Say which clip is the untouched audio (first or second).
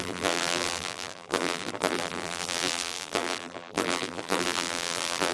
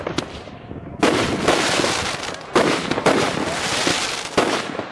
second